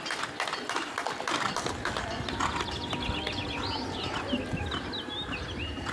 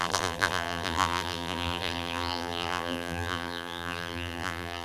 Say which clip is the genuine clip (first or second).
first